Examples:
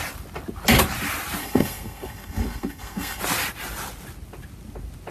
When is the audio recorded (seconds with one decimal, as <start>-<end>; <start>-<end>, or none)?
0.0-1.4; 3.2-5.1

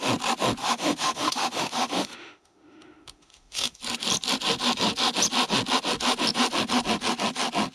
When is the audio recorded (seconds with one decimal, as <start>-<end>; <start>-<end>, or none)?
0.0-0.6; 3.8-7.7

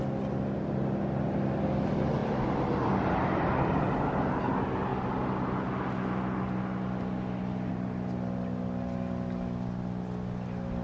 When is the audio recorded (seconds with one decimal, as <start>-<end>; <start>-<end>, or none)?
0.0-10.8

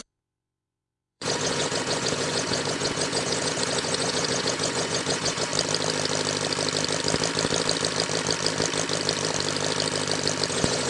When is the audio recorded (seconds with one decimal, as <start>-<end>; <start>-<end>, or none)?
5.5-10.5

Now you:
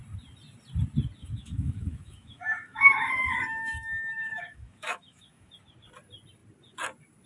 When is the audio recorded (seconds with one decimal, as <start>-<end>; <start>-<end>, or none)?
0.0-1.2; 5.5-7.3

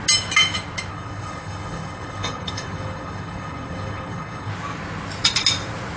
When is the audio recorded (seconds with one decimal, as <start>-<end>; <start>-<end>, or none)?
0.0-0.9; 4.5-6.0